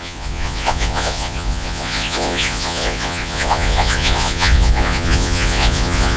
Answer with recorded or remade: remade